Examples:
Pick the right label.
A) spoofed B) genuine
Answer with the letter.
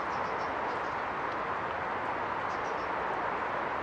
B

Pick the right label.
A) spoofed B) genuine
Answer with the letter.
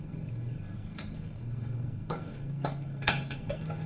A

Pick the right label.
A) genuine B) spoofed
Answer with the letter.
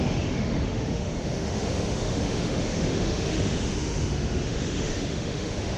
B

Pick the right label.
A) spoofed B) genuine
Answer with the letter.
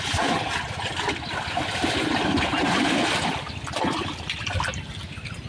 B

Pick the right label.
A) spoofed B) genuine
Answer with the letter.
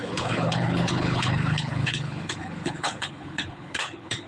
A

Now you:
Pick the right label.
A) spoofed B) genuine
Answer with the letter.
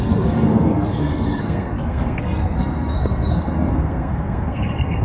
A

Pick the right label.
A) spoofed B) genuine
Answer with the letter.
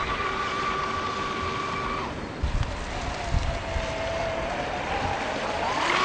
B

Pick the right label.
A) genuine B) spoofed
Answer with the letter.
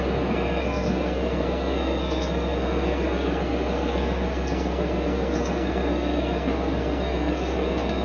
B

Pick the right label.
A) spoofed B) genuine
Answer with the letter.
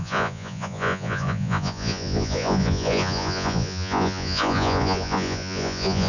A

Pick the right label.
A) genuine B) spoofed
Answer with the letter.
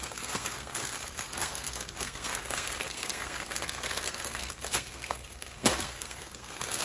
B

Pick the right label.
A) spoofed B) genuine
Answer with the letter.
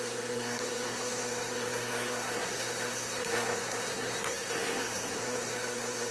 A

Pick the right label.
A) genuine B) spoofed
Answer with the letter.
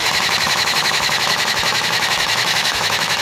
B